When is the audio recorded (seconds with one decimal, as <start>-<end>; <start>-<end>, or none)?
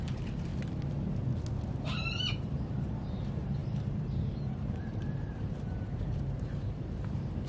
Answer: 0.5-1.8